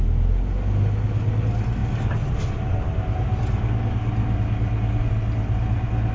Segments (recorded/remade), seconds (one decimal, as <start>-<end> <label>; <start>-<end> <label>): 0.0-6.1 recorded